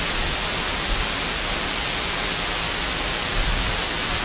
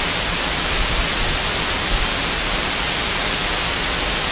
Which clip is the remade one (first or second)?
second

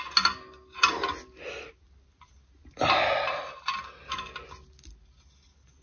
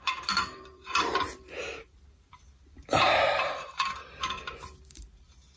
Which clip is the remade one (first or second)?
second